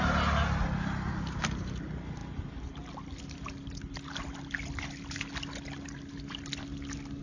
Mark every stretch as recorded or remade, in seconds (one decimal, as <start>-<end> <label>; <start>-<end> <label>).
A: 0.0-7.2 recorded

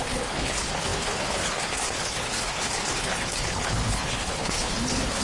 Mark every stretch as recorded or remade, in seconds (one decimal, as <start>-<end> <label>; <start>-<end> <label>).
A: 0.0-5.2 remade

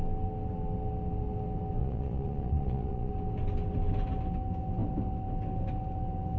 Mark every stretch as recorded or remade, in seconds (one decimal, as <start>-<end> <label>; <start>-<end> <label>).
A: 0.0-1.8 recorded; 1.8-3.1 remade; 3.1-6.4 recorded